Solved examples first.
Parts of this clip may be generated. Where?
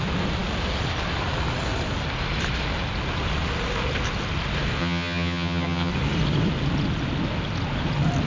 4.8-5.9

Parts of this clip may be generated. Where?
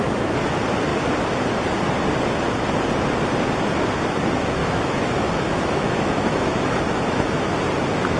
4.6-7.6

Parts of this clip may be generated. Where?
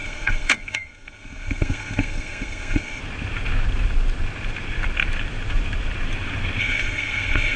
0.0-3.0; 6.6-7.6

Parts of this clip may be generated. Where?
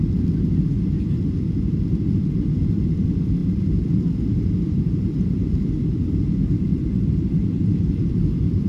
3.4-8.1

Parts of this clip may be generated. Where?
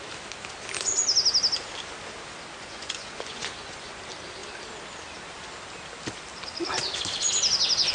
2.6-4.0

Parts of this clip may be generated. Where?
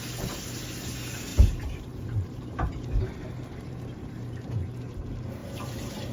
1.3-5.0; 5.4-6.1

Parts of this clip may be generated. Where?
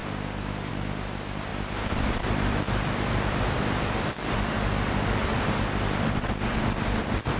0.0-0.7; 1.5-5.5; 6.5-7.4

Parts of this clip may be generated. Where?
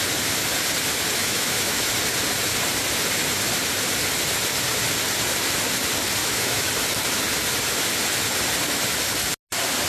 1.2-1.9; 6.2-6.7